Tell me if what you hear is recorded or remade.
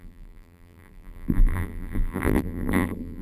remade